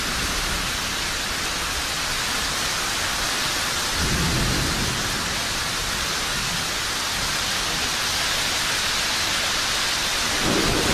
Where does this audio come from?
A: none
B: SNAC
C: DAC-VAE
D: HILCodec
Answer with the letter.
A